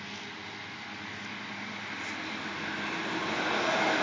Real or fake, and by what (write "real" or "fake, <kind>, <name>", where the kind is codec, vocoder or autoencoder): real